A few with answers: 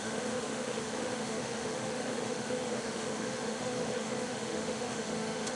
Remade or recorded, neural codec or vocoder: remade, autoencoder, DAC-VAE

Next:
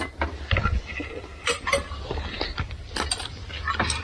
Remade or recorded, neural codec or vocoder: recorded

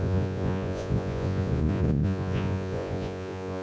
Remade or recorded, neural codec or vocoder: remade, vocoder, Vocos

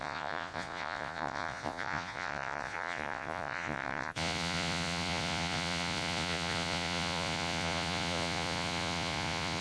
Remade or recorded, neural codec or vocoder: remade, vocoder, Vocos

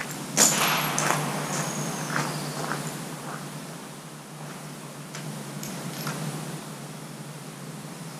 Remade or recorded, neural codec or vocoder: recorded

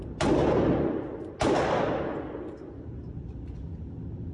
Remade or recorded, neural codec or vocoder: recorded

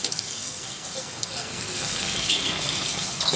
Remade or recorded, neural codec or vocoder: remade, codec, SNAC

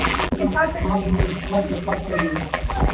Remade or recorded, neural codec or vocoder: remade, vocoder, BigVGAN v2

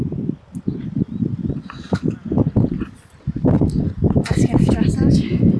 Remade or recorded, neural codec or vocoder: recorded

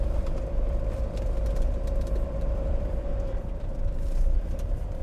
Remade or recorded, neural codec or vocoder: remade, vocoder, BigVGAN v2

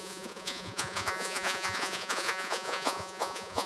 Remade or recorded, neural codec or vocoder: remade, vocoder, Vocos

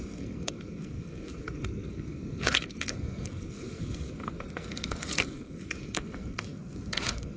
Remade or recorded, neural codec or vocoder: remade, codec, SNAC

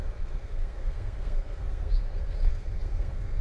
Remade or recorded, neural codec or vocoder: remade, codec, SNAC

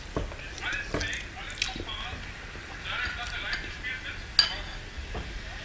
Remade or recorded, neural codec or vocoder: recorded